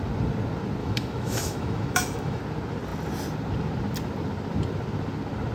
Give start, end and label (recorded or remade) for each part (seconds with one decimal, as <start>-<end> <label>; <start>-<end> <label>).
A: 0.0-0.8 recorded; 0.8-2.4 remade; 2.4-5.5 recorded